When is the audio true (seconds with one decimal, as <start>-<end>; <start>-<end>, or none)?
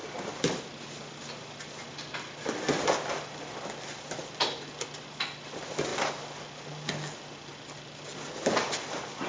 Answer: 0.0-9.3